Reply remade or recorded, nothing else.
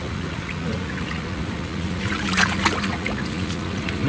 remade